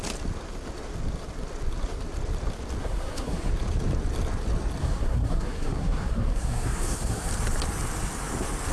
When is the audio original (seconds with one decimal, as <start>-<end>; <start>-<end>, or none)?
0.0-2.8; 3.5-4.8; 7.3-8.7